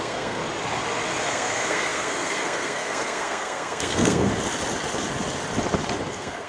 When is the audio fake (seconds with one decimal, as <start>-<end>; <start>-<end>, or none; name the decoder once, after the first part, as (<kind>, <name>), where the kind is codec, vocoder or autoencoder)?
0.0-0.4 (codec, SNAC); 1.3-4.3; 6.1-6.5